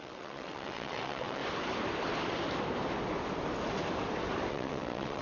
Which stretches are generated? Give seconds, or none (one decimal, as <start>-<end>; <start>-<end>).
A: 0.0-1.4; 4.5-5.2